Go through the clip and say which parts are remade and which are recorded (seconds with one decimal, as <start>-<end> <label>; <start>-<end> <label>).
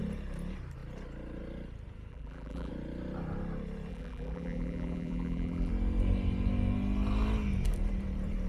0.0-2.1 recorded; 2.1-2.7 remade; 2.7-3.9 recorded; 3.9-5.7 remade; 5.7-8.5 recorded